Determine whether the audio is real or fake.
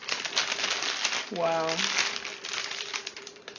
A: real